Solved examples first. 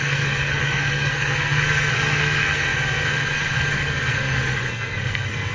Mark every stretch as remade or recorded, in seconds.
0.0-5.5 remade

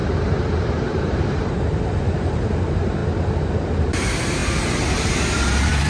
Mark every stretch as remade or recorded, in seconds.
0.0-3.0 remade; 3.0-3.8 recorded; 3.8-5.9 remade

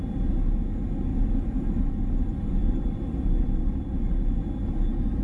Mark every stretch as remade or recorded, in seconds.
0.0-1.1 recorded; 1.1-4.2 remade; 4.2-5.2 recorded

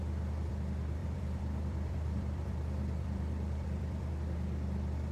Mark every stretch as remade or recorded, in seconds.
0.0-1.0 recorded; 1.0-4.1 remade; 4.1-5.1 recorded

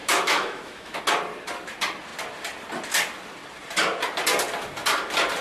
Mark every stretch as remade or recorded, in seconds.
0.0-1.0 remade; 1.0-5.4 recorded

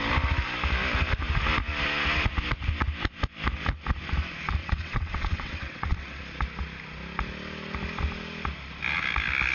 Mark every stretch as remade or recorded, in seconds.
0.0-4.6 recorded; 4.6-6.2 remade; 6.2-9.5 recorded